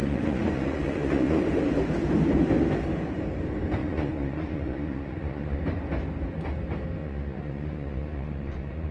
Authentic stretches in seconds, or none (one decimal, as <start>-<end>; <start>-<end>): 1.4-3.8; 5.6-7.0